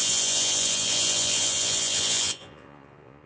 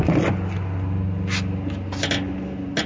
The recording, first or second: second